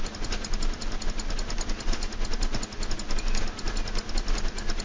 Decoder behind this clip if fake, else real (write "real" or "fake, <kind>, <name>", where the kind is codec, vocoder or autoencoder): real